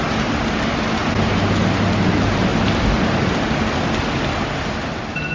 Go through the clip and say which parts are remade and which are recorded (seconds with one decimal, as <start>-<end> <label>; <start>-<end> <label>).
0.0-5.3 recorded